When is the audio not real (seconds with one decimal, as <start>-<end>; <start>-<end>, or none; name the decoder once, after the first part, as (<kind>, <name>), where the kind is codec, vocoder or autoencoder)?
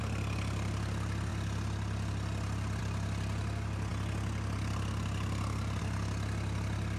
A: none